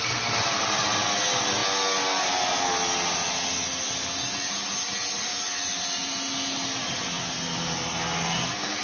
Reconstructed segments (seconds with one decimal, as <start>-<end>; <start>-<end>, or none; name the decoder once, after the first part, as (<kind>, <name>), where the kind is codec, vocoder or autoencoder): none